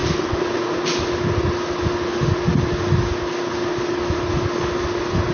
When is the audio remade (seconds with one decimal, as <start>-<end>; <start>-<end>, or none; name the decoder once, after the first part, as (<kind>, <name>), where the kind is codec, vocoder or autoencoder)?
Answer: none